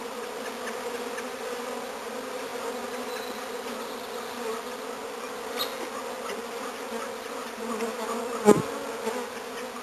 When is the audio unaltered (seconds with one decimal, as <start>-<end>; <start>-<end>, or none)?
0.0-9.8